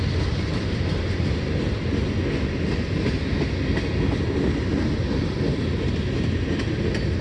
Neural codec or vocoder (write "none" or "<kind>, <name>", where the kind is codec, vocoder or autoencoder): none